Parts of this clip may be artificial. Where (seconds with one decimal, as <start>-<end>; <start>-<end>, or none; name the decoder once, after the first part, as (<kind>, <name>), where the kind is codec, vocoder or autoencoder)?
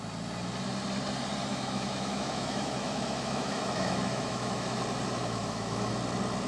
1.5-4.8 (autoencoder, DAC-VAE); 5.2-5.9